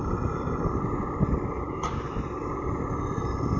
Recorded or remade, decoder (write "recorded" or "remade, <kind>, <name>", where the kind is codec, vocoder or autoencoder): remade, vocoder, BigVGAN v2